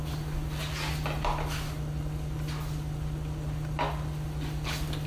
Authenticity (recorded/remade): recorded